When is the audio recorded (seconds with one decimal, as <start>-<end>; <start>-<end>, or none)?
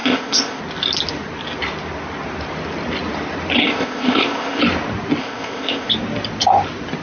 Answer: 0.6-3.6; 4.6-5.2; 5.9-7.0